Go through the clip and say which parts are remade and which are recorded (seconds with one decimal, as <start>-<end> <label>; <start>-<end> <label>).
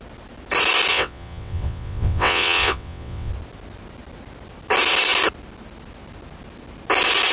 0.0-0.9 recorded; 0.9-3.3 remade; 3.3-7.3 recorded